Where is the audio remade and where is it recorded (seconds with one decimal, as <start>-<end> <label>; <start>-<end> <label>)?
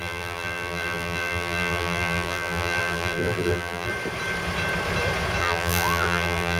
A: 0.0-3.9 remade; 3.9-5.4 recorded; 5.4-6.6 remade